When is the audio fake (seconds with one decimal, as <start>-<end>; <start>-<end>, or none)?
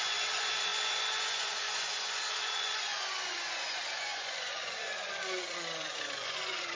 0.0-6.7